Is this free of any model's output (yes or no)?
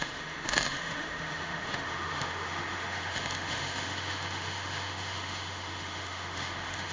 no